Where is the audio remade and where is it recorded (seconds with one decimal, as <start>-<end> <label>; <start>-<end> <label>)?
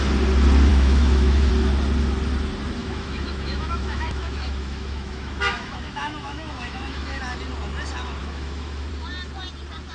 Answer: 0.0-0.7 recorded; 0.7-1.5 remade; 1.5-2.8 recorded; 2.8-7.2 remade; 7.2-8.2 recorded; 8.2-8.9 remade; 8.9-9.9 recorded